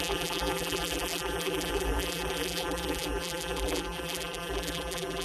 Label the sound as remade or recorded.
remade